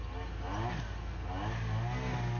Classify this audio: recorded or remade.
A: recorded